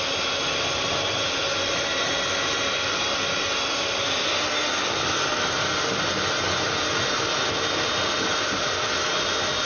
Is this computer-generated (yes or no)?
no